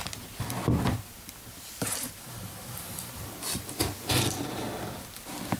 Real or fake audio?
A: fake